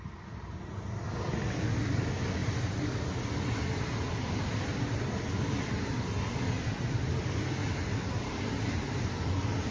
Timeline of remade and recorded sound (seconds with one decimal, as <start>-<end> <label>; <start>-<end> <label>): 0.0-9.7 recorded